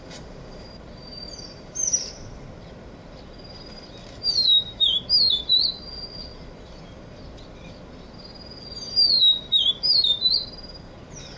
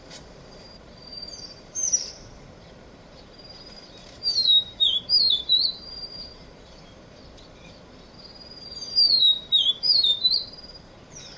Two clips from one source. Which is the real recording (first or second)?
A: first